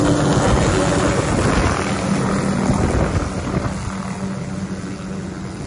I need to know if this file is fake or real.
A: real